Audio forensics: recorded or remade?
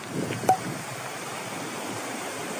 recorded